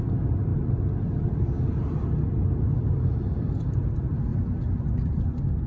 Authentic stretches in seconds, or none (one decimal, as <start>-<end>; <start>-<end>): 0.0-5.7